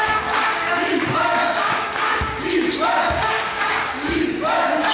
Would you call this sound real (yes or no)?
no